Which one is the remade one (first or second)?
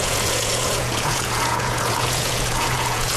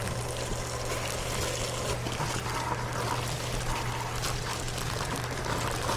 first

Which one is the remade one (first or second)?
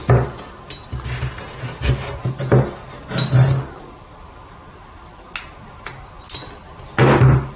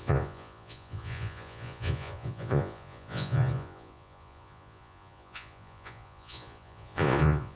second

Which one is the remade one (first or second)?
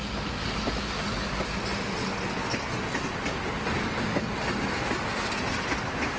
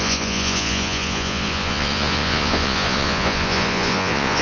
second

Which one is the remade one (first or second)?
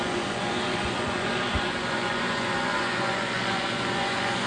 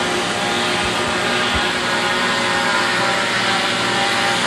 first